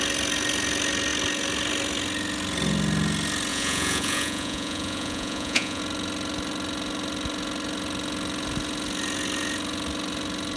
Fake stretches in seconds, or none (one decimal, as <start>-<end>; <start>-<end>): 3.5-5.8